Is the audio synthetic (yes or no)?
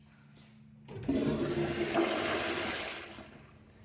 no